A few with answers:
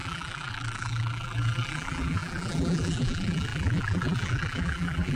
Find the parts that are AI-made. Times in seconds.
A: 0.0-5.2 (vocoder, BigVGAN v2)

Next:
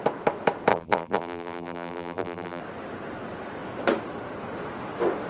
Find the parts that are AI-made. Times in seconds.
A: 0.7-2.6 (vocoder, BigVGAN v2)